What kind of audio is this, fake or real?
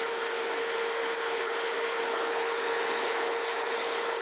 fake